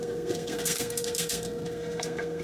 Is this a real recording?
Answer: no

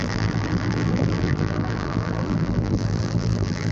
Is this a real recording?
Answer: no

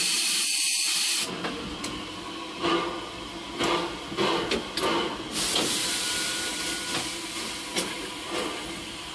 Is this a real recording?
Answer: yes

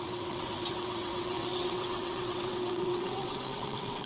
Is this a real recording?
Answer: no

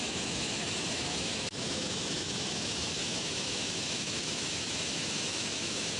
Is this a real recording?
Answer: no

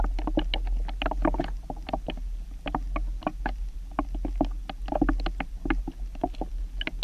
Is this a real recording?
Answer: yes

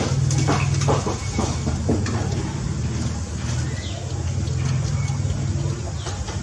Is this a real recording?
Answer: yes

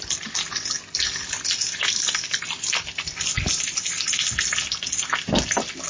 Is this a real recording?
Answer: yes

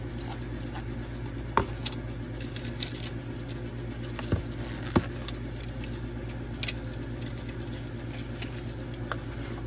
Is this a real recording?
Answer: yes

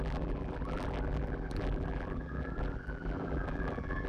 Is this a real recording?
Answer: no